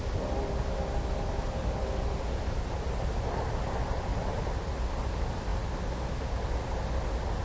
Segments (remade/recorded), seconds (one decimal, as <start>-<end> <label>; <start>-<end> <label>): 0.0-7.4 recorded